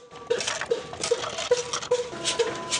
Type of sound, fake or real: real